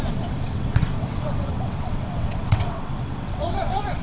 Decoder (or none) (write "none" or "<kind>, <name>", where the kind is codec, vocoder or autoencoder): vocoder, WaveNeXt